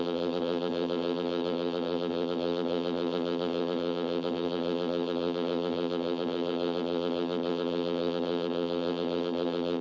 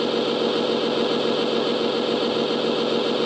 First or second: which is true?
second